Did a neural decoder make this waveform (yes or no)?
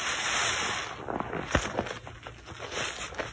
no